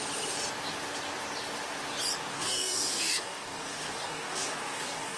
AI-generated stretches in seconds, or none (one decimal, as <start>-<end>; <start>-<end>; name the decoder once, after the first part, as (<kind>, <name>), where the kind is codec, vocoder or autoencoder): 2.3-5.2 (codec, DAC)